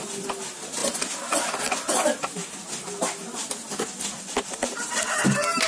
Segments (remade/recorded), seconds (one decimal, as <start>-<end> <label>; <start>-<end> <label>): 0.0-5.7 recorded

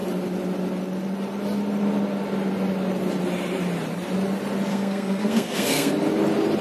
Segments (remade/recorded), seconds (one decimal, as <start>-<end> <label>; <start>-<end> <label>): 0.0-4.7 recorded; 4.7-5.9 remade; 5.9-6.6 recorded

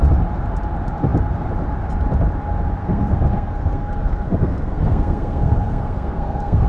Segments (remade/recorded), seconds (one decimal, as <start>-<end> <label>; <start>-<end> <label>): 0.0-2.8 recorded; 2.8-6.7 remade

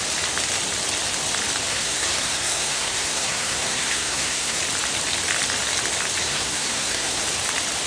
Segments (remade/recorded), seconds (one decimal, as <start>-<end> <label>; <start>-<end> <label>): 0.0-1.7 recorded; 1.7-4.6 remade; 4.6-6.2 recorded; 6.2-7.2 remade; 7.2-7.9 recorded

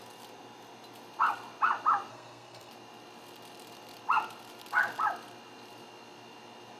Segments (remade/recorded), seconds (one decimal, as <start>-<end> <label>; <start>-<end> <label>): 0.0-2.1 recorded; 2.1-2.7 remade; 2.7-6.8 recorded

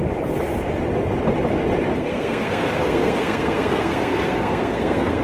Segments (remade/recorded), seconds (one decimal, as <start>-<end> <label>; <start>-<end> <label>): 0.0-1.9 recorded; 1.9-5.2 remade

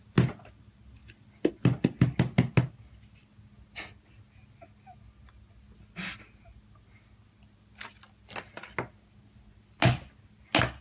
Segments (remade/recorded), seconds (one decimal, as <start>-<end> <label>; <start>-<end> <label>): 0.0-10.8 recorded